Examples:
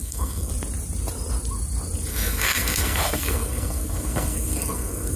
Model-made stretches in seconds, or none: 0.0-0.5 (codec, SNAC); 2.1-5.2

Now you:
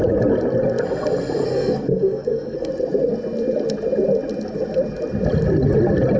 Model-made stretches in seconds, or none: 1.4-2.7 (codec, SNAC)

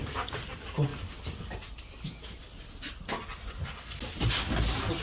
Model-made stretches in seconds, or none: none

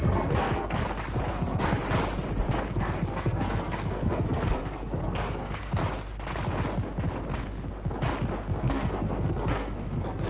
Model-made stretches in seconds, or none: 0.0-0.8 (codec, SNAC); 1.3-1.8; 2.7-5.8; 8.6-10.3

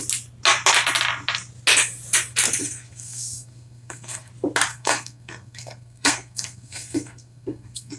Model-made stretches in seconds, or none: 2.6-4.3 (codec, SNAC); 4.7-8.0

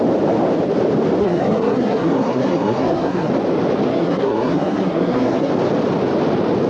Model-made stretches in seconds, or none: 1.2-3.3 (codec, SNAC); 3.9-5.5